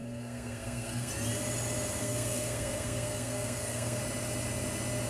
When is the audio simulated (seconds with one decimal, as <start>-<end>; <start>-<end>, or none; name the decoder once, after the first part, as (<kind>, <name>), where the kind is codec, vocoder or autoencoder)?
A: 0.0-1.1 (codec, SNAC); 2.0-4.0

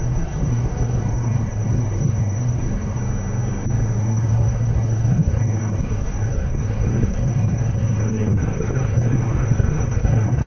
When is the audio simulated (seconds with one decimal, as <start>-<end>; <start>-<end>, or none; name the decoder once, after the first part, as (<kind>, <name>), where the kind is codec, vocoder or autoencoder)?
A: 0.0-3.0 (codec, SNAC); 4.0-10.5

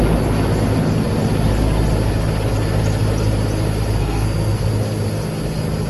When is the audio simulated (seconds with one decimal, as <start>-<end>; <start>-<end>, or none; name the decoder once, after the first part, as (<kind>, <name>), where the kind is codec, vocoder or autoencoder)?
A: 4.0-4.7 (codec, SNAC)

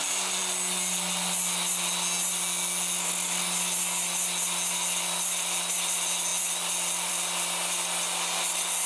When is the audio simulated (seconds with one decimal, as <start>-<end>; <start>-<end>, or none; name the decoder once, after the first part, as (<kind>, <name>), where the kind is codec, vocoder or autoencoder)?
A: none